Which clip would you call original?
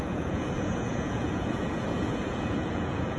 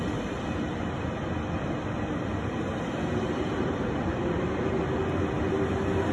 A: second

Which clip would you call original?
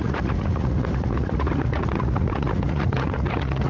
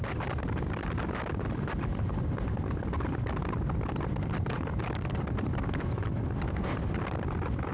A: second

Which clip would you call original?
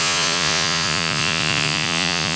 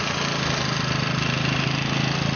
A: second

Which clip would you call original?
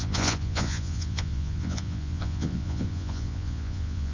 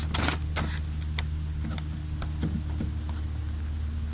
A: second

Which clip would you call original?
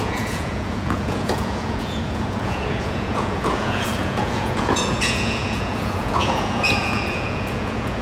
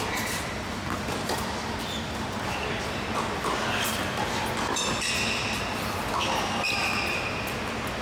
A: second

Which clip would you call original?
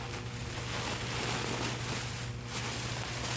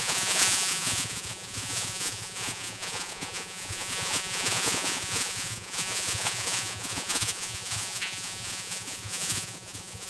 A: first